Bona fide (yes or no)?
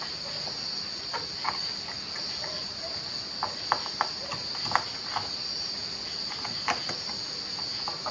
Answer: yes